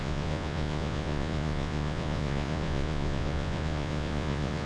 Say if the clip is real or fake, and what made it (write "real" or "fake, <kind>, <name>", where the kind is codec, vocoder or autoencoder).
fake, vocoder, Vocos